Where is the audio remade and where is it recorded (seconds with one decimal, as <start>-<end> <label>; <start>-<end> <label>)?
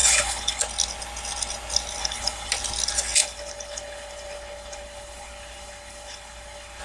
0.0-0.6 remade; 0.6-2.0 recorded; 2.0-2.5 remade; 2.5-3.2 recorded; 3.2-6.8 remade